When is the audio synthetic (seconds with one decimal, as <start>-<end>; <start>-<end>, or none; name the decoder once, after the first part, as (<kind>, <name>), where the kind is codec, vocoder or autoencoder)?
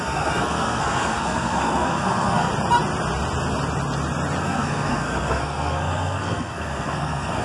0.0-2.5 (codec, SNAC); 4.4-7.4